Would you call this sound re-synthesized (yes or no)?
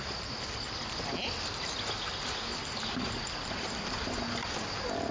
no